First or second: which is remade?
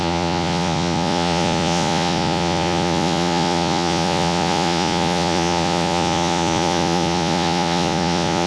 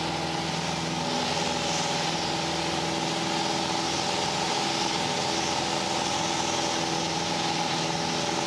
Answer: first